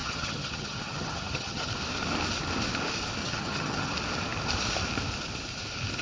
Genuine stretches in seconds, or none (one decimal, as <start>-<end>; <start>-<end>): 1.7-3.2; 3.9-6.0